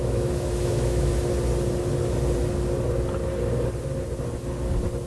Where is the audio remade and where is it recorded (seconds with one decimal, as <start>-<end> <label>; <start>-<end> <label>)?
0.0-1.1 remade; 1.1-5.1 recorded